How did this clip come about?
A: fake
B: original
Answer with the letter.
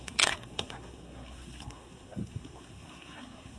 A